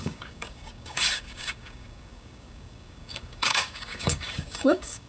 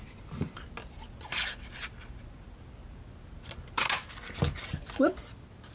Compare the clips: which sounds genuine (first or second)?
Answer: second